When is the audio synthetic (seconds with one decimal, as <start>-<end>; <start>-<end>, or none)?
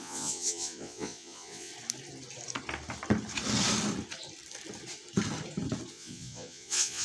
0.0-1.7; 5.9-7.0